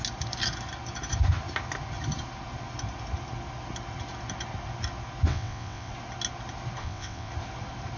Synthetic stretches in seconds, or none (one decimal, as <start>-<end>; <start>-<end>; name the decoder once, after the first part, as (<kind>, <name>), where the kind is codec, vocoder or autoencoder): 5.3-5.9 (vocoder, WaveNeXt); 6.8-7.3